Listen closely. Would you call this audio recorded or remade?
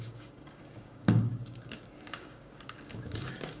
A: remade